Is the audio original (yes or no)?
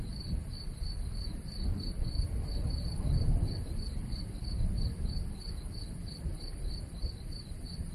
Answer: yes